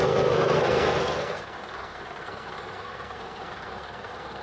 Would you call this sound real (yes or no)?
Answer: no